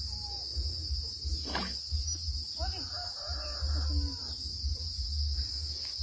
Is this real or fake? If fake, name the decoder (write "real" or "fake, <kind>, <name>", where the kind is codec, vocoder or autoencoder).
real